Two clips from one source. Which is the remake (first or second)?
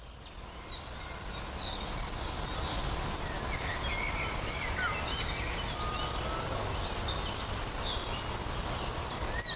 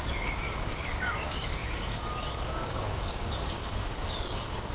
second